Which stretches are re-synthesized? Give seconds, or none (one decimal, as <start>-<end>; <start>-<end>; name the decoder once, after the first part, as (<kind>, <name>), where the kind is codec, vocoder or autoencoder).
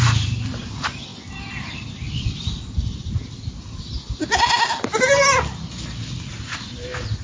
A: none